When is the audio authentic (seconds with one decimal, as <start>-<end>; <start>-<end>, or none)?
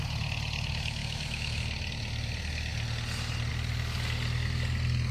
0.0-1.0; 1.6-5.1